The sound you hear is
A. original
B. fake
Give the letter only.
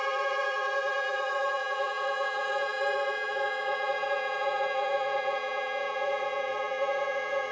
B